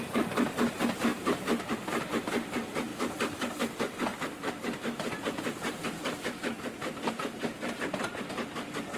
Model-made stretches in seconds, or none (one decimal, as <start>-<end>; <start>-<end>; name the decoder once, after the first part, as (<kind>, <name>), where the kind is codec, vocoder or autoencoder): 1.1-2.2 (vocoder, BigVGAN v2); 2.9-3.6; 4.1-8.0